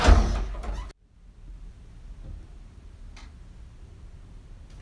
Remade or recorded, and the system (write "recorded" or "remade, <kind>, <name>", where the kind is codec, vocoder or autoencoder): recorded